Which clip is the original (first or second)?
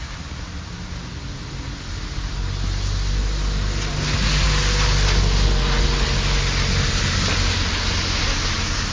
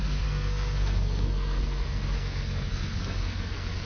first